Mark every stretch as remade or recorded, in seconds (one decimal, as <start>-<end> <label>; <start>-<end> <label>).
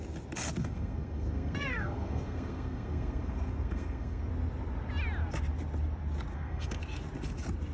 0.0-0.6 recorded; 0.6-4.3 remade; 4.3-6.3 recorded; 6.3-6.8 remade; 6.8-7.7 recorded